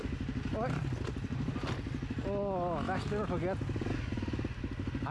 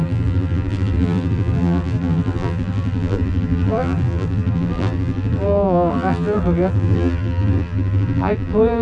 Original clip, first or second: first